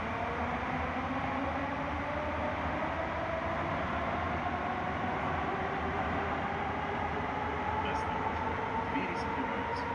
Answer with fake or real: real